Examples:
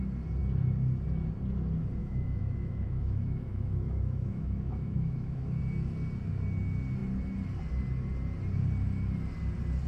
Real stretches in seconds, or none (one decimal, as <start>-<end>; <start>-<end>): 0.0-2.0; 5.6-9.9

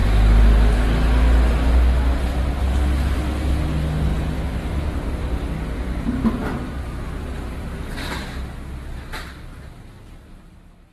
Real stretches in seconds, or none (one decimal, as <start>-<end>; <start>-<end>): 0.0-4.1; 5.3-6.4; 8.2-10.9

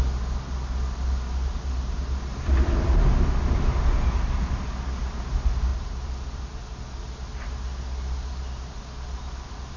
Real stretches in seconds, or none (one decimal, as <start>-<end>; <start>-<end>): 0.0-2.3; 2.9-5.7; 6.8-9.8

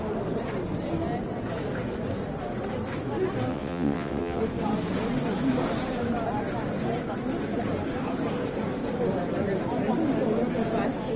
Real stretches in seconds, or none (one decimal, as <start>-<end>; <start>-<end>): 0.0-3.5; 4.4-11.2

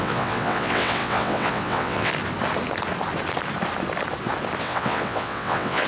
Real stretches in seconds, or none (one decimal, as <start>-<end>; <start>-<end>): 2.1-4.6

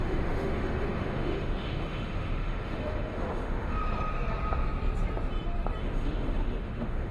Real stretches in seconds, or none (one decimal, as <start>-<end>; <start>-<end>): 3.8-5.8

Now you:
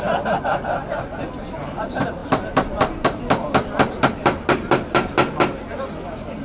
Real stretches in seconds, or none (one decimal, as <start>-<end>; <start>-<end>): 0.0-6.4